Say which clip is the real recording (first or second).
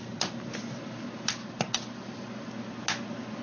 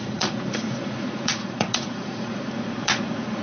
first